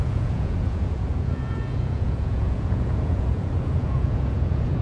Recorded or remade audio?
remade